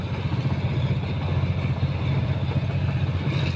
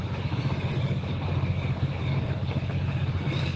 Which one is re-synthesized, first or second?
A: second